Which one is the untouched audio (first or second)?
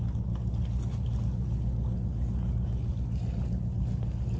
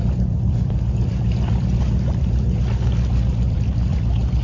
first